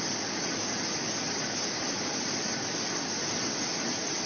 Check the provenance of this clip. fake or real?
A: real